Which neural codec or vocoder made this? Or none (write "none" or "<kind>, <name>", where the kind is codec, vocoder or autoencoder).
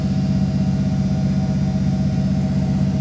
none